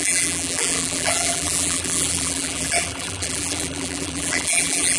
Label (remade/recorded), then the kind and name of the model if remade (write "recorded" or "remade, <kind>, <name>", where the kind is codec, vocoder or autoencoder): remade, vocoder, BigVGAN v2